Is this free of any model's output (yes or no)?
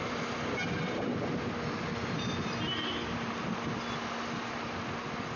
yes